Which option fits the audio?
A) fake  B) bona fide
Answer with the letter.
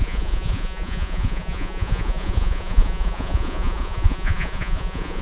A